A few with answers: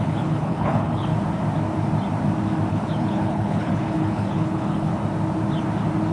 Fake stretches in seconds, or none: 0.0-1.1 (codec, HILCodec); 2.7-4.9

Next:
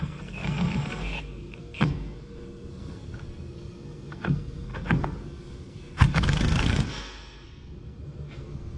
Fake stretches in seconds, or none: 0.0-8.8 (codec, SNAC)

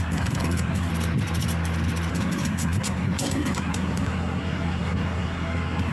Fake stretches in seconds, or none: 0.0-0.9 (codec, SNAC); 2.1-5.9

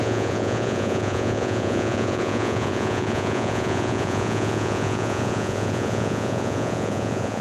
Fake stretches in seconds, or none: 0.0-7.4 (vocoder, Vocos)

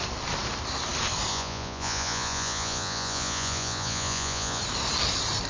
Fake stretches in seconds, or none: 1.3-4.6 (vocoder, Vocos)

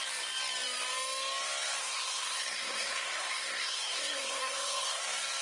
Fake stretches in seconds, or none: 1.8-5.0 (codec, SNAC)